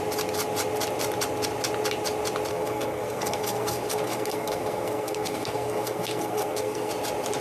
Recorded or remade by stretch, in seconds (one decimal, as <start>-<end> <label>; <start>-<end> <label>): 0.0-2.5 recorded; 2.5-6.9 remade; 6.9-7.4 recorded